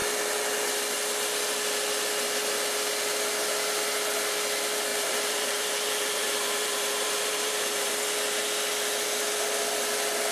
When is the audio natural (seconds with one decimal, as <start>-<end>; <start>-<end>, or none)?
0.0-4.9; 7.9-10.3